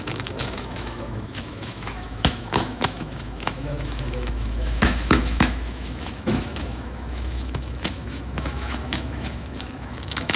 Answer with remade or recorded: remade